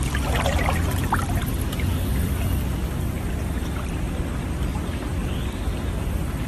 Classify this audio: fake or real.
real